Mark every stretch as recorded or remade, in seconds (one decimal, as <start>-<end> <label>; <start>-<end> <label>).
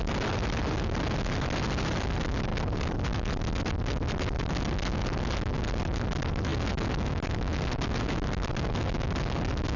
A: 0.0-9.8 recorded